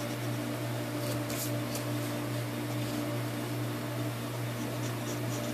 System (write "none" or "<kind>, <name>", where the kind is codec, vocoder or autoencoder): none